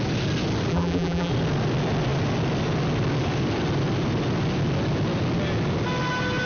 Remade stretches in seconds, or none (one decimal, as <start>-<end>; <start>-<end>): 0.7-1.3